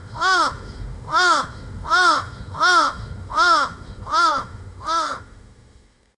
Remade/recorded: remade